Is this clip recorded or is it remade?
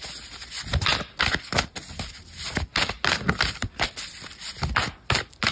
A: recorded